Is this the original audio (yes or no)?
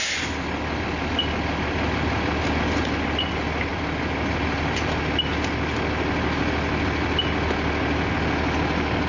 yes